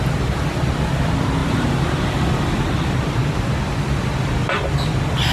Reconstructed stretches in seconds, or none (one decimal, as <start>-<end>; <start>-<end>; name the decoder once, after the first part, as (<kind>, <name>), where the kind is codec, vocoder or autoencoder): 1.4-1.9 (vocoder, BigVGAN v2)